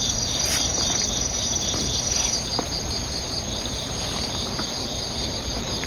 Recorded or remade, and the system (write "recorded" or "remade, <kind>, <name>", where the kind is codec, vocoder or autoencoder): remade, vocoder, BigVGAN v2